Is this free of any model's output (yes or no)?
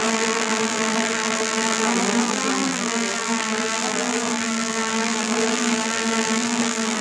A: no